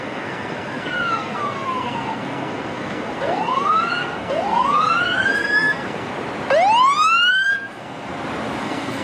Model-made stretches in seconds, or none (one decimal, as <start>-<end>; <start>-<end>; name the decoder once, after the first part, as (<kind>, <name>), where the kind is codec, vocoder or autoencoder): 0.0-6.1 (codec, SNAC); 7.3-8.1; 8.6-9.0